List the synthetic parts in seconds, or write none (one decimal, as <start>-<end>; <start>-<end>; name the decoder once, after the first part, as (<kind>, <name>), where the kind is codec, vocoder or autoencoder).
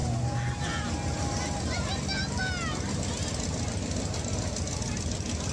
none